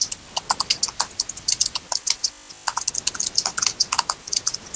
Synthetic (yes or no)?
no